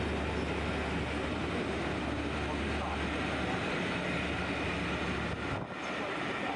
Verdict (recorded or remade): recorded